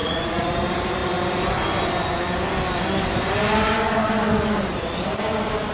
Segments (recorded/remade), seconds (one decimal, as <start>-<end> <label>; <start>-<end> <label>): 0.0-0.5 remade; 0.5-5.7 recorded